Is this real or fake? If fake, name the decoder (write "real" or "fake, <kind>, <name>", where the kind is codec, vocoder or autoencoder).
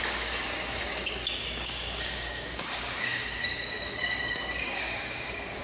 fake, codec, DAC